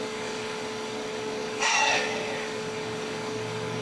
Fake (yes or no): yes